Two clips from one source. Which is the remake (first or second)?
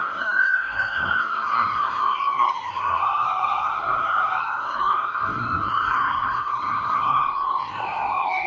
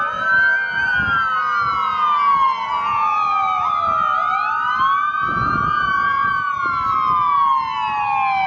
first